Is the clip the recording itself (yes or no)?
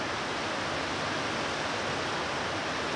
yes